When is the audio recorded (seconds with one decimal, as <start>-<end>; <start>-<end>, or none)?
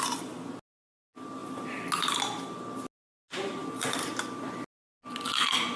0.0-5.8